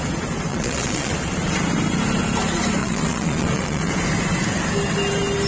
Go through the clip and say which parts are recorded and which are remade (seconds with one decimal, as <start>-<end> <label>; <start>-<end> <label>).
0.0-0.5 recorded; 0.5-1.1 remade; 1.1-2.8 recorded; 2.8-3.9 remade; 3.9-5.5 recorded